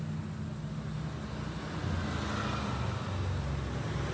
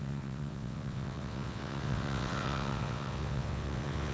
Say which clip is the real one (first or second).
first